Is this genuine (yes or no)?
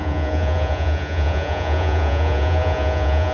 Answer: no